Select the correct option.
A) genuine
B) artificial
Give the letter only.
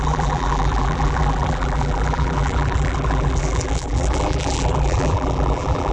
B